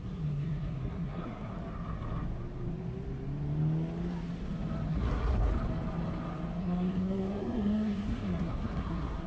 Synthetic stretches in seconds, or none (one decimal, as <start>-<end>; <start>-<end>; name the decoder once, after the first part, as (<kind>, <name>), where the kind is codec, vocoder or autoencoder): 0.0-1.5 (codec, SNAC); 4.9-5.5; 6.6-9.3

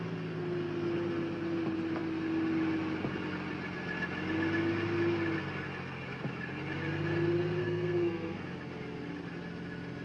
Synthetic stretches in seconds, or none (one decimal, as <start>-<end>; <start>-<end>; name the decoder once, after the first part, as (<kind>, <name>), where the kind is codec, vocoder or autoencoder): 7.6-8.4 (codec, SNAC)

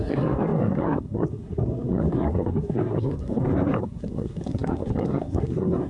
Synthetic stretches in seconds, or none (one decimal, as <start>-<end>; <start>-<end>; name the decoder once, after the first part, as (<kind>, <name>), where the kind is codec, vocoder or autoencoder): 0.0-5.9 (codec, SNAC)

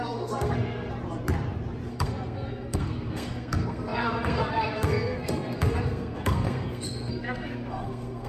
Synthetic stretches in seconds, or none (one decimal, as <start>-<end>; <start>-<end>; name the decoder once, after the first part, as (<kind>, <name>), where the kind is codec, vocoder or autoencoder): 0.0-0.9 (codec, SNAC); 1.9-8.3